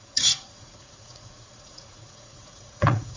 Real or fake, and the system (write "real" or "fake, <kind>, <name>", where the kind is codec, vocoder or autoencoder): fake, vocoder, Vocos